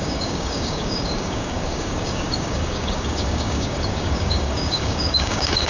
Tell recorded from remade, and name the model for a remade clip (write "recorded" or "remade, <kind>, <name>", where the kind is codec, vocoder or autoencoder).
remade, codec, DAC